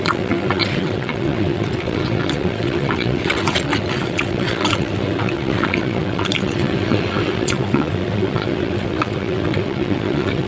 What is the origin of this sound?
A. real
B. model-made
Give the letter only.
B